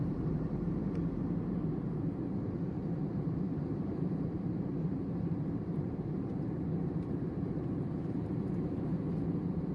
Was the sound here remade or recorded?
remade